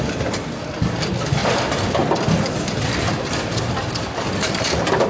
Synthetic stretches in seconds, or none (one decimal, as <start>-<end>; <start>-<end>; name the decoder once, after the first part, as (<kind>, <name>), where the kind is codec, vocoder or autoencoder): none